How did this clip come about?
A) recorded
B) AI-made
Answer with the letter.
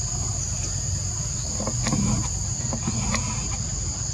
A